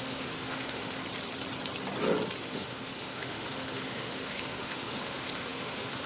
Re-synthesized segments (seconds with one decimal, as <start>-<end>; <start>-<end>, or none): 0.0-1.0; 2.4-6.1